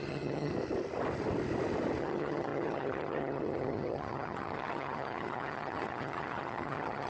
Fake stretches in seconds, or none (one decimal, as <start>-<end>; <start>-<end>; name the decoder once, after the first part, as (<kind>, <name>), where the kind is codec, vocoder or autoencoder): 0.0-0.5 (vocoder, HiFi-GAN); 2.0-7.1